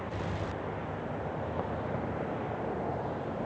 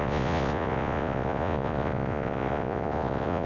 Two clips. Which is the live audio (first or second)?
first